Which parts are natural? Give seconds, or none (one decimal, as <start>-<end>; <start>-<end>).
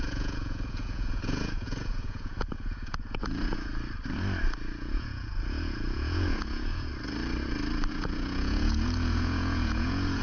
3.7-4.8; 6.9-7.9